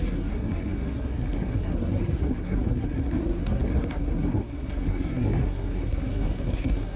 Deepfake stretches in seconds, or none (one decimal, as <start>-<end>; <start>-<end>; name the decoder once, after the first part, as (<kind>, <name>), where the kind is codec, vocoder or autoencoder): 0.0-7.0 (codec, SNAC)